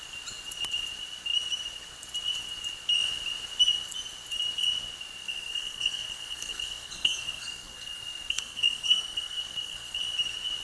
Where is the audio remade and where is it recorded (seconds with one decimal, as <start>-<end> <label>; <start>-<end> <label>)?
0.0-5.2 recorded; 5.2-10.0 remade; 10.0-10.6 recorded